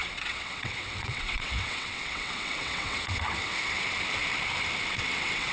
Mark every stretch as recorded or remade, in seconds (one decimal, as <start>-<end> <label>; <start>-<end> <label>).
0.0-3.5 remade; 3.5-4.9 recorded; 4.9-5.5 remade